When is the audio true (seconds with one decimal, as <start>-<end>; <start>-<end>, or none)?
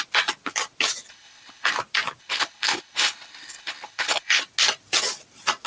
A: 0.0-1.1; 1.7-2.2; 4.4-5.7